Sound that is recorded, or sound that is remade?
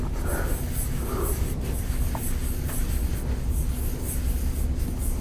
recorded